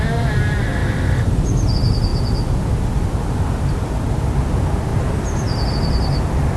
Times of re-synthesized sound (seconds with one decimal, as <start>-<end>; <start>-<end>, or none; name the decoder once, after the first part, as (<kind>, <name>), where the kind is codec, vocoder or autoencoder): none